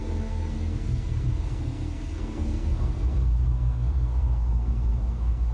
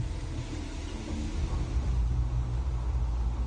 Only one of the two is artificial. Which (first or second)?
first